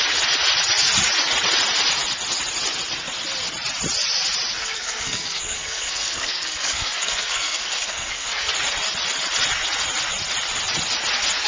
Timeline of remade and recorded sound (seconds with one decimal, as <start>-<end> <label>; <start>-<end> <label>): 0.0-4.6 recorded; 4.6-8.5 remade; 8.5-11.5 recorded